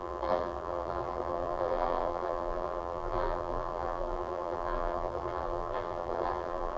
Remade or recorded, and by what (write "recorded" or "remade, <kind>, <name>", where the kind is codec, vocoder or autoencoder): remade, vocoder, BigVGAN v2